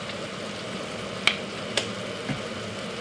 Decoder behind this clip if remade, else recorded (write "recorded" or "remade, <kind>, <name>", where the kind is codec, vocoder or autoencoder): recorded